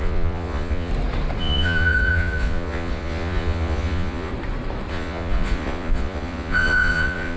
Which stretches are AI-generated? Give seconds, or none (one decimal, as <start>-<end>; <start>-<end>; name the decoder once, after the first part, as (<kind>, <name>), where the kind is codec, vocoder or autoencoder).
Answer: 0.0-0.9 (vocoder, Vocos); 1.4-4.3; 4.9-7.4